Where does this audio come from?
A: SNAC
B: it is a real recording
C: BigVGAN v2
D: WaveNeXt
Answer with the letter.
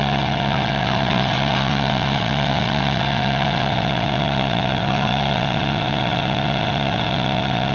D